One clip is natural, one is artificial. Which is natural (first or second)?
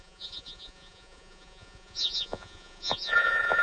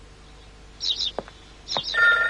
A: second